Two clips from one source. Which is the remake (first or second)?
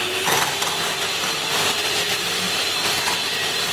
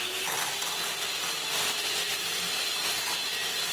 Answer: first